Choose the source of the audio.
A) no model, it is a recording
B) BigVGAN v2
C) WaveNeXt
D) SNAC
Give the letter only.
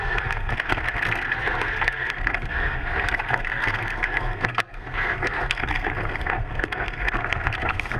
D